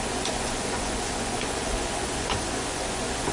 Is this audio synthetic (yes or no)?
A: yes